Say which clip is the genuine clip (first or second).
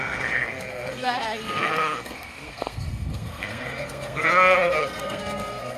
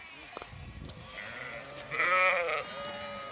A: second